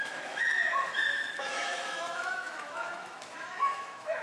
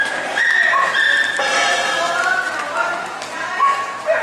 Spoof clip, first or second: first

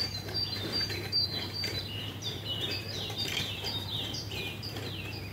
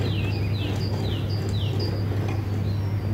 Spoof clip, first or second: first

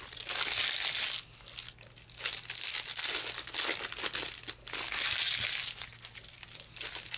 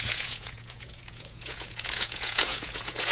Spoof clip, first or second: second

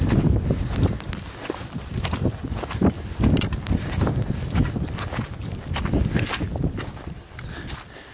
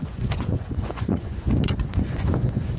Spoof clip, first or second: second